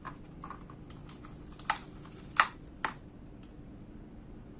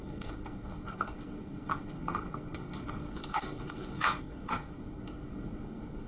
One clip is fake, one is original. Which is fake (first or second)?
second